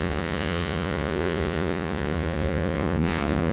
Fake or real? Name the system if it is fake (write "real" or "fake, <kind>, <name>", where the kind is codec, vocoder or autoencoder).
fake, vocoder, Vocos